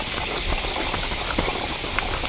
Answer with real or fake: real